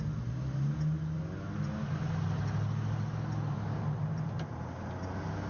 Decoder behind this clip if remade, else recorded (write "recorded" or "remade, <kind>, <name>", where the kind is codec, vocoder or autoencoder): recorded